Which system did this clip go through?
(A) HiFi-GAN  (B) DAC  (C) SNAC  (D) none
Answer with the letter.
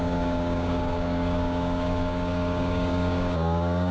B